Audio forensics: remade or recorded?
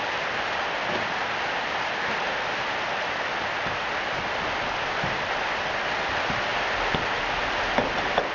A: recorded